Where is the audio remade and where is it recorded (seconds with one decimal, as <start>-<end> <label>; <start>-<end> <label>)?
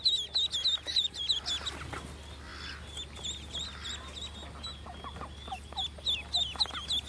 0.0-0.9 recorded; 0.9-1.5 remade; 1.5-7.1 recorded